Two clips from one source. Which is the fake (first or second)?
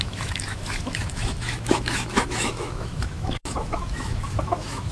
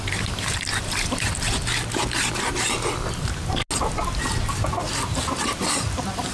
first